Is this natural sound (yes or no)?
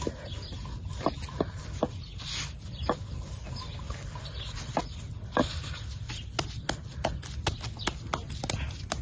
yes